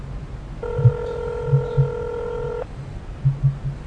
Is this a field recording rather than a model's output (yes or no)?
yes